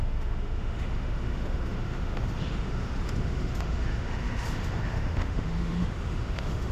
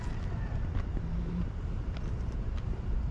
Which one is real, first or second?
second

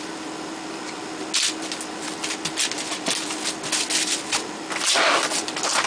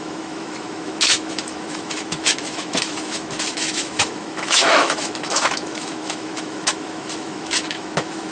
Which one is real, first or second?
first